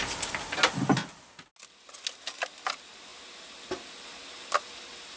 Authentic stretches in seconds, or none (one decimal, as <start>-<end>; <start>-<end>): 0.0-5.2